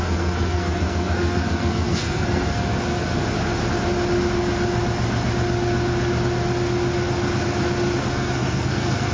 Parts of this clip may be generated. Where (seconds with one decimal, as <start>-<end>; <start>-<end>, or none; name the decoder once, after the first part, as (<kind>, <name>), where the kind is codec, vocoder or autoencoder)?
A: 0.0-3.2 (codec, SNAC); 8.0-9.1